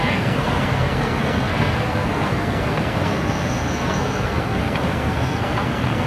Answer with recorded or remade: remade